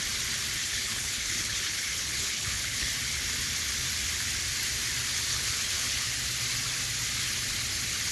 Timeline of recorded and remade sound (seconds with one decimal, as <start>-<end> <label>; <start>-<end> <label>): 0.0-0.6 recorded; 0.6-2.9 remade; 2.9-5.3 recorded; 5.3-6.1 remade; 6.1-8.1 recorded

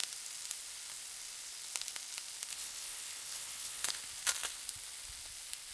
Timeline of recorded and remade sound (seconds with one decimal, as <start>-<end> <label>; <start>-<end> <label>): 0.0-2.5 recorded; 2.5-4.0 remade; 4.0-5.7 recorded

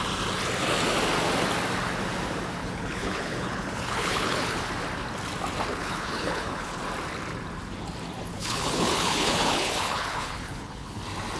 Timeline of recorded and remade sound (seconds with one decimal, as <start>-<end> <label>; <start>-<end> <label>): 0.0-2.6 recorded; 2.6-4.7 remade; 4.7-5.7 recorded; 5.7-6.8 remade; 6.8-8.3 recorded; 8.3-11.0 remade; 11.0-11.4 recorded